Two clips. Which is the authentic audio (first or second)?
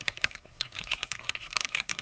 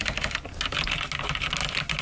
second